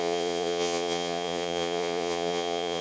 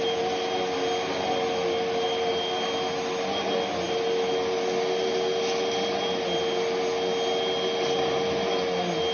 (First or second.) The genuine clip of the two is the second